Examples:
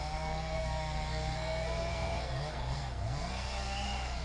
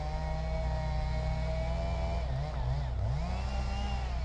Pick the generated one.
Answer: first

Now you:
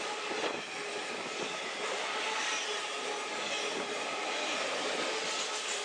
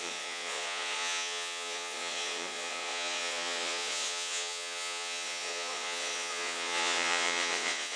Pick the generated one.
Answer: second